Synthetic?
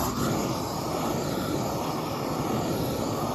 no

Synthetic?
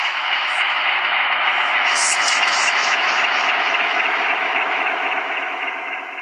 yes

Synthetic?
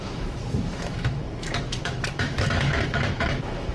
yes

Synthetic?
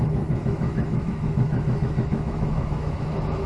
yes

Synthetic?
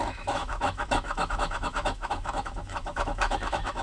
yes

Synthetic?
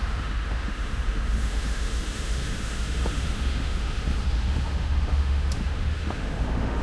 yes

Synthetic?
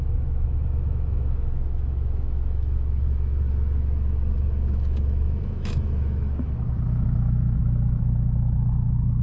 yes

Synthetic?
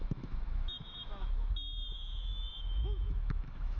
yes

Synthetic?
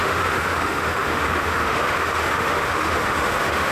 yes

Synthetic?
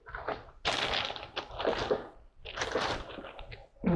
no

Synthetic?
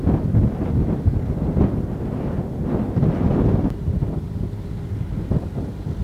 no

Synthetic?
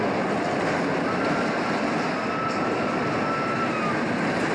no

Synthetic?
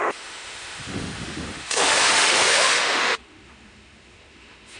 yes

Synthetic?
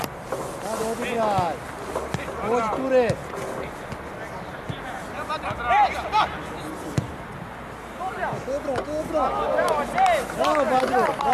no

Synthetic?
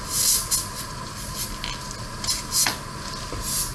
no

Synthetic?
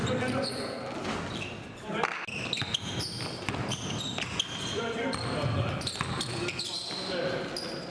no